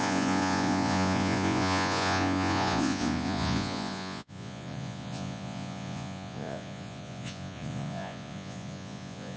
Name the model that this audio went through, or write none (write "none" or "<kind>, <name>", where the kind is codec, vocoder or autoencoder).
vocoder, Vocos